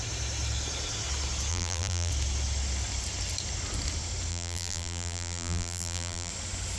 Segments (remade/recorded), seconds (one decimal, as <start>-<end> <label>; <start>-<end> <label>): 0.0-1.5 recorded; 1.5-2.1 remade; 2.1-4.3 recorded; 4.3-6.3 remade; 6.3-6.8 recorded